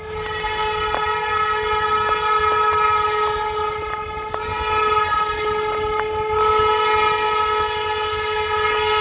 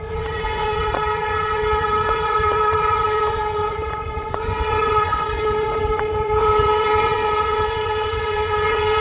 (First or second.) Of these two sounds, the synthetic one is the second